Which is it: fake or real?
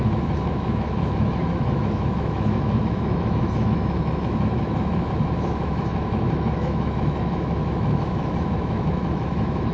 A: fake